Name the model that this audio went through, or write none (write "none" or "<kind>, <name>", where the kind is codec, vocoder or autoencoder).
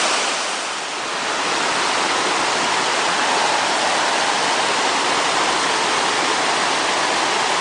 none